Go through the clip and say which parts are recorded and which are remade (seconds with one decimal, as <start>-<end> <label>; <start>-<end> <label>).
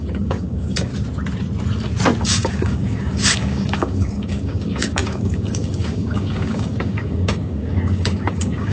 0.0-0.9 remade; 0.9-2.2 recorded; 2.2-8.7 remade